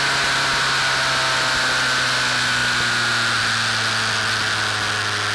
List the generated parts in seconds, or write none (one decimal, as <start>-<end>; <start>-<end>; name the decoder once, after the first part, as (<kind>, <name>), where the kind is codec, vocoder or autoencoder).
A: none

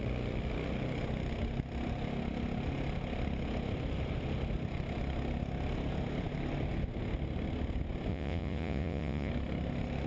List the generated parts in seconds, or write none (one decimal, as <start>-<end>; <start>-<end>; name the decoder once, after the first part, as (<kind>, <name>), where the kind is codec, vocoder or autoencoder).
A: 8.1-9.3 (vocoder, Vocos)

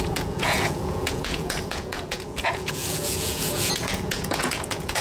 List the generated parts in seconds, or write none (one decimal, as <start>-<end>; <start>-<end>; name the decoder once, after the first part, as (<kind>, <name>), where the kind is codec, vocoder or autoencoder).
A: 0.0-5.0 (vocoder, Vocos)